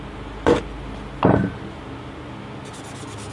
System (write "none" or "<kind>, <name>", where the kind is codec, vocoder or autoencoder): none